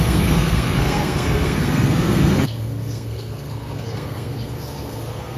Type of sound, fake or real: fake